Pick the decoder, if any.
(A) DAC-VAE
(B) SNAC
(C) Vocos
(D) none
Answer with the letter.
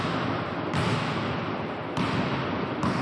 D